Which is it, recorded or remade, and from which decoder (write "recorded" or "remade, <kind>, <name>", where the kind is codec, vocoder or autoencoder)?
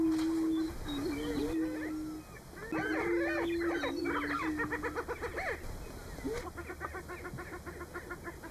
recorded